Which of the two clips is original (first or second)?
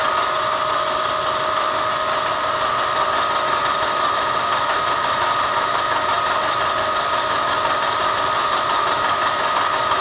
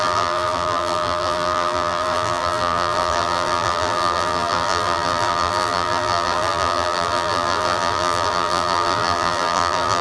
first